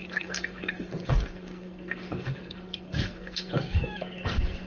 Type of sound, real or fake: fake